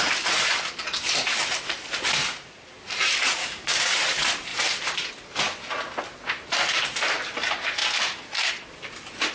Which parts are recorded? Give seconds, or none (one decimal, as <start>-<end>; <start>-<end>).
0.0-3.4; 4.0-9.3

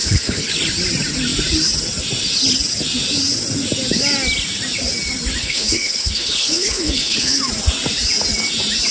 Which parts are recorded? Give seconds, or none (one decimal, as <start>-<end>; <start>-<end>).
0.5-5.4; 7.4-8.9